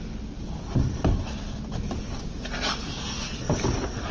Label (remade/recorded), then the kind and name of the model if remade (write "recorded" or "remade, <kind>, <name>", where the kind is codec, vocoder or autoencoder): recorded